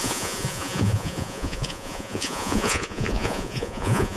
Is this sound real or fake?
fake